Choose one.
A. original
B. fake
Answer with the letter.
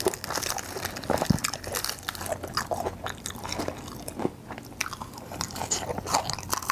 A